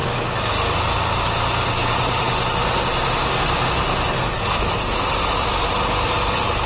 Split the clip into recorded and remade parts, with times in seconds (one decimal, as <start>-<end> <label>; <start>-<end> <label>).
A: 0.0-1.8 recorded; 1.8-2.8 remade; 2.8-6.7 recorded

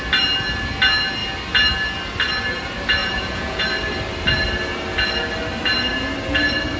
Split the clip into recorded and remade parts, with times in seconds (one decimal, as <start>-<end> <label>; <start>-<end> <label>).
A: 0.0-3.0 recorded; 3.0-3.6 remade; 3.6-6.8 recorded